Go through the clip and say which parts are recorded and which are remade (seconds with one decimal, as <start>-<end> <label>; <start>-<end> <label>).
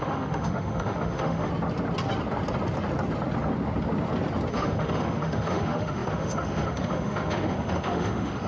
0.0-1.5 remade; 1.5-4.5 recorded; 4.5-8.5 remade